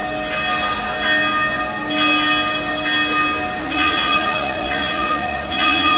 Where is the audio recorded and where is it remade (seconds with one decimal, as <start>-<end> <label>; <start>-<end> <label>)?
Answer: 0.0-3.6 recorded; 3.6-6.0 remade